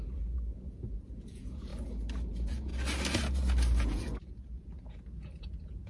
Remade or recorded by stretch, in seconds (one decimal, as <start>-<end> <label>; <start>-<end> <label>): 0.0-1.7 remade; 1.7-2.3 recorded; 2.3-2.7 remade; 2.7-3.8 recorded; 3.8-5.9 remade